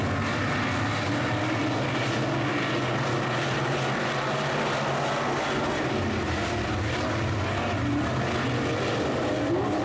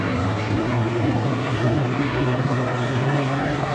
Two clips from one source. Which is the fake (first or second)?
second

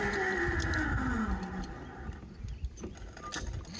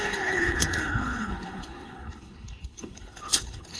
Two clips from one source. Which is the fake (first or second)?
second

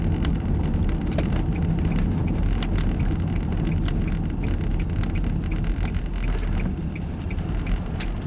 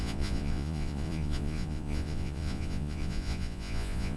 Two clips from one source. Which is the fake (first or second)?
second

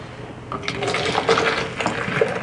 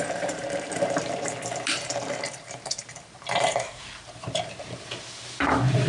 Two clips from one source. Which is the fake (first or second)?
second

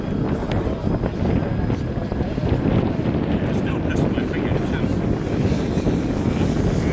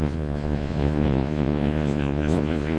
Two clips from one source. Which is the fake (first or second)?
second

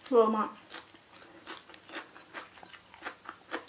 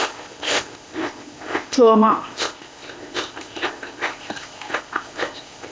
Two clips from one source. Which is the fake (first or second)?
second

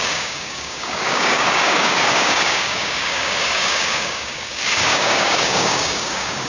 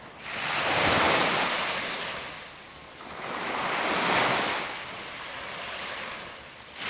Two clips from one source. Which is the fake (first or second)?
first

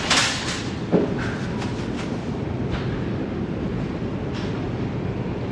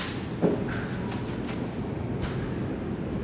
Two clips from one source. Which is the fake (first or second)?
first